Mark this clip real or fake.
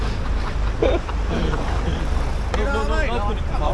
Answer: real